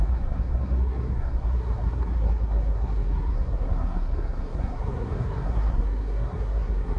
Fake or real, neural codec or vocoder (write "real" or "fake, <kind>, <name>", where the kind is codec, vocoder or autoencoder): fake, codec, SNAC